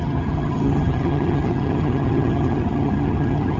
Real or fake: fake